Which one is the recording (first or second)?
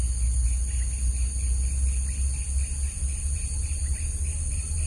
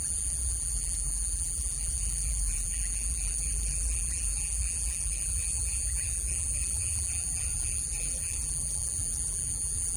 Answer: first